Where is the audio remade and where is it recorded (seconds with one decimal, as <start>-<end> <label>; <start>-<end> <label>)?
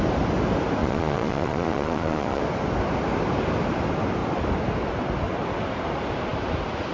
0.0-0.8 recorded; 0.8-2.4 remade; 2.4-6.9 recorded